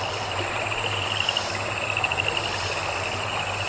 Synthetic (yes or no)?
no